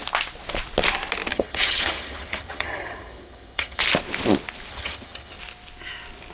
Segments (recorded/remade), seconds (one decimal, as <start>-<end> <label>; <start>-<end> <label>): 0.0-1.3 recorded; 1.3-3.8 remade; 3.8-4.7 recorded; 4.7-5.4 remade; 5.4-6.3 recorded